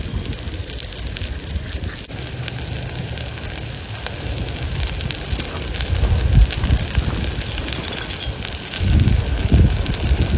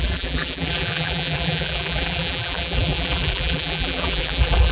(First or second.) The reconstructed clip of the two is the second